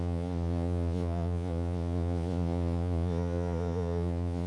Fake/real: fake